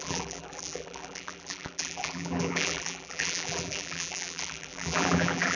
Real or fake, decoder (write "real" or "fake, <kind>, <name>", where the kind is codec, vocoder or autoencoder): fake, vocoder, BigVGAN v2